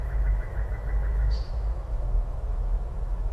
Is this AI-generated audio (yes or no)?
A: yes